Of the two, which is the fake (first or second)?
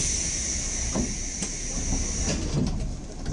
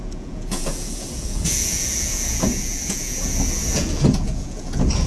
second